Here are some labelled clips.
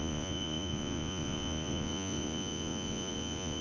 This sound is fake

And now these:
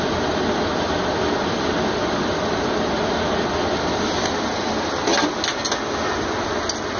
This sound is real